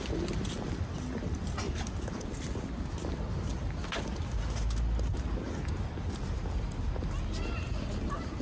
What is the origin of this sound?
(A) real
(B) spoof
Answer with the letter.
A